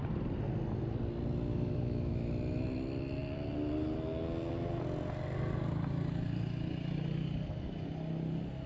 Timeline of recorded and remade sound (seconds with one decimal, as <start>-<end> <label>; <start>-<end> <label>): 0.0-1.5 recorded; 1.5-2.3 remade; 2.3-8.7 recorded